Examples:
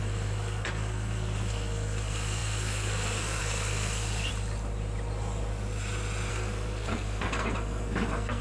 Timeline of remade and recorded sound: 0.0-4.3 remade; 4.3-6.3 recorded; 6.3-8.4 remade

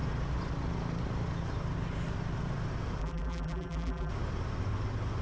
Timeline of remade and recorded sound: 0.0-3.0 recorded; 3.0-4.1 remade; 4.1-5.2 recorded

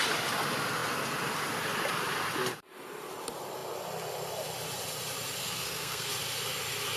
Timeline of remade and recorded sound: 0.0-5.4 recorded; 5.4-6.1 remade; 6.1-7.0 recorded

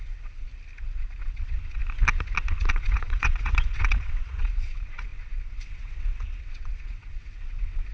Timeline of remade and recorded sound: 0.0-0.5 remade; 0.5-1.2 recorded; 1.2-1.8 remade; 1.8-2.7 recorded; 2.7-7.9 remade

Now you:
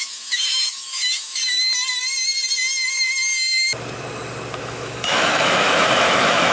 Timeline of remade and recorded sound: 0.0-1.4 remade; 1.4-4.6 recorded; 4.6-6.5 remade

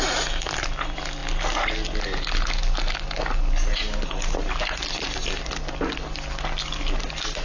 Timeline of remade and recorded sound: 0.0-7.4 recorded